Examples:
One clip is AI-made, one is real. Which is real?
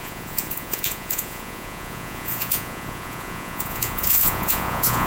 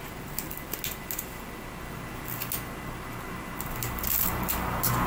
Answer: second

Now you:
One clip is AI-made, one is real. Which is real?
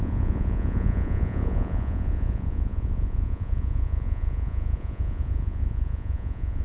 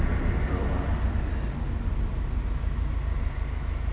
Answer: second